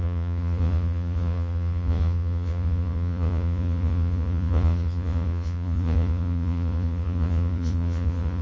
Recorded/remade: remade